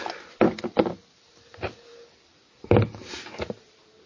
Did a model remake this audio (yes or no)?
no